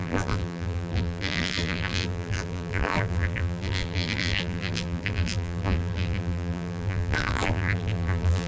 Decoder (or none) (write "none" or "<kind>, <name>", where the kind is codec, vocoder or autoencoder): vocoder, BigVGAN v2